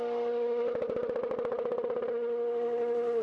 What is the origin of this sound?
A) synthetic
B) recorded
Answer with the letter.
B